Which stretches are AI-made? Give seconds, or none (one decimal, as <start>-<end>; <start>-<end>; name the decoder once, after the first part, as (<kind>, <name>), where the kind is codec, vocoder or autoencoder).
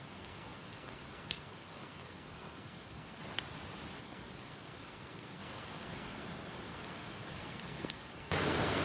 0.0-3.2 (codec, SNAC); 4.0-8.8